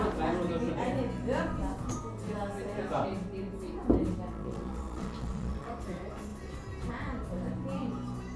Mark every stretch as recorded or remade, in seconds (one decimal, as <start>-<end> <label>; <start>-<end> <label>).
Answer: 0.0-4.3 recorded; 4.3-5.7 remade; 5.7-8.4 recorded